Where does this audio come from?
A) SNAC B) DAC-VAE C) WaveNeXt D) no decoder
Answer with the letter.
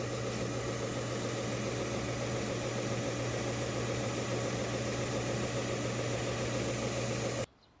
D